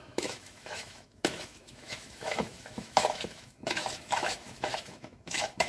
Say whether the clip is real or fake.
fake